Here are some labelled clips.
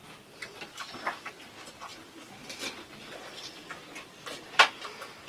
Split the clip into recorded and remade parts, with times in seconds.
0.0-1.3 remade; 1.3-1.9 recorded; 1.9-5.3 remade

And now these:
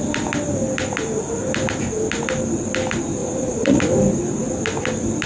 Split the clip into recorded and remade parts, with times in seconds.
0.0-3.2 recorded; 3.2-3.8 remade; 3.8-5.3 recorded

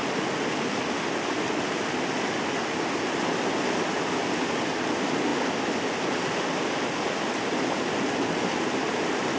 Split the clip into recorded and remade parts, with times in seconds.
0.0-9.4 recorded

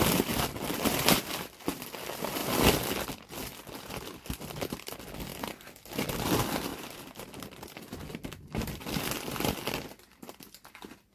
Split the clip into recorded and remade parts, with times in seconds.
0.0-6.7 recorded; 6.7-10.7 remade; 10.7-11.1 recorded

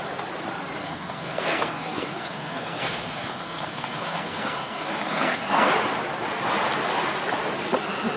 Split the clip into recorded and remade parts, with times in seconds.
0.0-0.8 recorded; 0.8-5.7 remade; 5.7-8.2 recorded

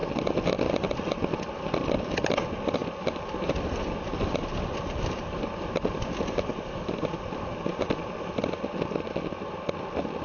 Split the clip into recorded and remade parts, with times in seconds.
0.0-10.2 recorded